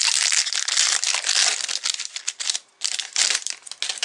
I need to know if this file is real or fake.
real